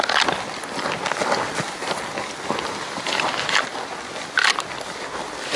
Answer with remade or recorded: recorded